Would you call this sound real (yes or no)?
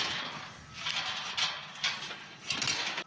yes